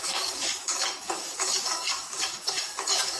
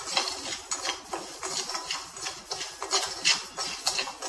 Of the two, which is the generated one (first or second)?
first